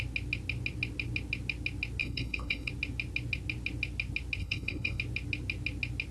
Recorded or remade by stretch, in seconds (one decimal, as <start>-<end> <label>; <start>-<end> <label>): 0.0-2.0 recorded; 2.0-2.7 remade; 2.7-4.4 recorded; 4.4-5.0 remade; 5.0-6.1 recorded